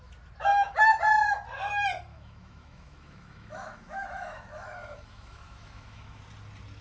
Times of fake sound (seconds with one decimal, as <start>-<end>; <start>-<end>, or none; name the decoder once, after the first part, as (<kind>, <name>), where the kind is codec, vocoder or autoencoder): 0.5-1.0 (autoencoder, DAC-VAE); 2.1-6.2